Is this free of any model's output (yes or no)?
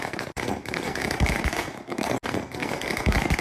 no